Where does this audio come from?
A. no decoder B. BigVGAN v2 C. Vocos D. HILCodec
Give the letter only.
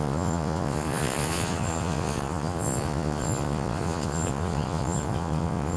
C